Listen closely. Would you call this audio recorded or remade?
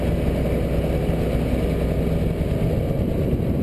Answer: recorded